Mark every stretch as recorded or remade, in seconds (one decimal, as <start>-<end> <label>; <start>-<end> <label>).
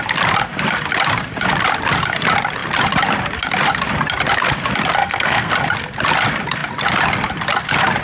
0.0-5.0 recorded; 5.0-5.5 remade; 5.5-8.0 recorded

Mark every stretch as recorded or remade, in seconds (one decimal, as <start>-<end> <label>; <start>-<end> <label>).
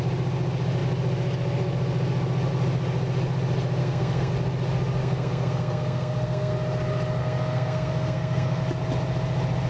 0.0-3.8 recorded; 3.8-4.3 remade; 4.3-5.0 recorded; 5.0-6.5 remade; 6.5-7.2 recorded; 7.2-8.6 remade; 8.6-9.7 recorded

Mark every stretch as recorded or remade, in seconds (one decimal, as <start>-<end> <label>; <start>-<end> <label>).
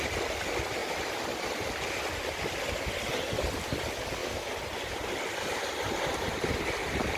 0.0-7.2 recorded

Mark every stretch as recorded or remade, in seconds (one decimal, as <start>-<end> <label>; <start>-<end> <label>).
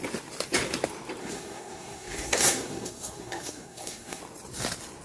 0.0-1.2 recorded; 1.2-4.2 remade; 4.2-5.0 recorded